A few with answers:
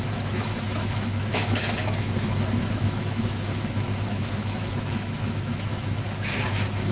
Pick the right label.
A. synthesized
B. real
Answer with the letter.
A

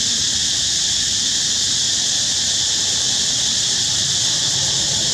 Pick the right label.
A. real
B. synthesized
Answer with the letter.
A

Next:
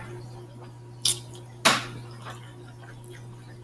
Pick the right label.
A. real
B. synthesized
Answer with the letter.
A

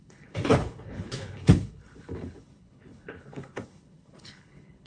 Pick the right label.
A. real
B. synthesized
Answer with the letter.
B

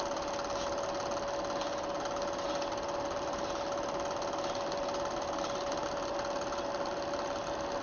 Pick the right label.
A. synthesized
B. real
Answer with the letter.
B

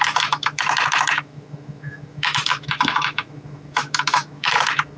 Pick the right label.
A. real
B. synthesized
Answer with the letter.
B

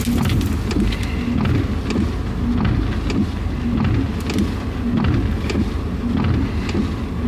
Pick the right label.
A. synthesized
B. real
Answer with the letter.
B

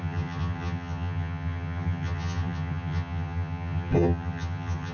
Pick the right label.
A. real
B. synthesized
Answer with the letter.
B